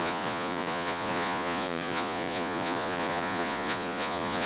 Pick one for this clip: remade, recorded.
remade